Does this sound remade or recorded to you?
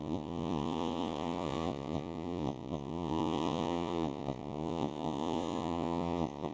remade